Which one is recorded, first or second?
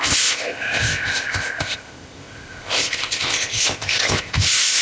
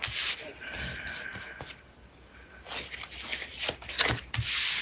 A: second